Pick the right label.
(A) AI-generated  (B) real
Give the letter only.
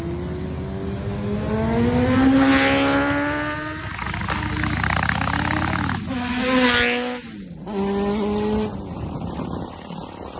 B